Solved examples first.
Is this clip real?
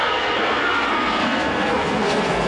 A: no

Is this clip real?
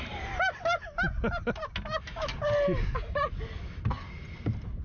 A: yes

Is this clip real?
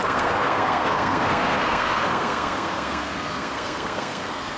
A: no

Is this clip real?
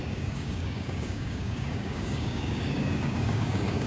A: no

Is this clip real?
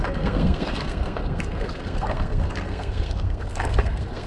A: no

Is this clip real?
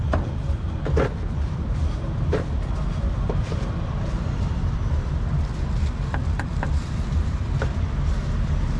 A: no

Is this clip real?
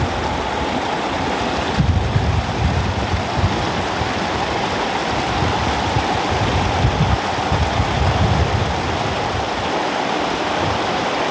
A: yes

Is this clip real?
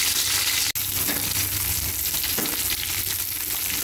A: yes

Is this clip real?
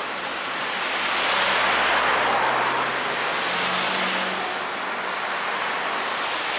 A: yes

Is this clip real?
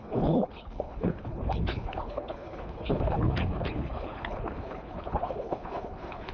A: no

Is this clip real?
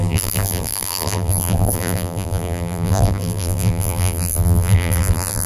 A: no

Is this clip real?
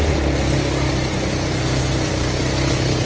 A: yes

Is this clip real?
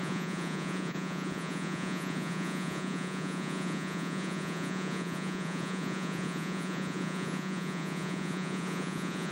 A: no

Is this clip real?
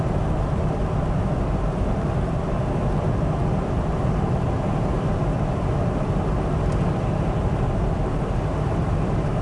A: yes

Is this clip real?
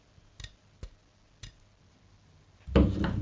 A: yes